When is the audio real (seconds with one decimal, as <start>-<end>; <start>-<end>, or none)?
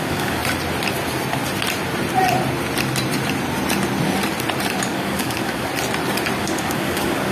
0.4-4.8; 5.7-6.4